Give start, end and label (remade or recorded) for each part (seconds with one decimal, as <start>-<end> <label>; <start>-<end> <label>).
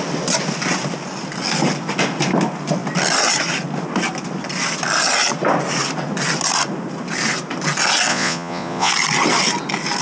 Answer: 0.0-8.1 recorded; 8.1-8.9 remade; 8.9-10.0 recorded